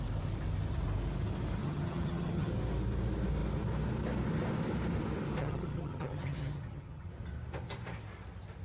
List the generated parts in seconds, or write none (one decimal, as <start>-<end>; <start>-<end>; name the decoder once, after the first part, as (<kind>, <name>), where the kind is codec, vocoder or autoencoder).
1.6-2.5 (vocoder, HiFi-GAN); 5.4-7.1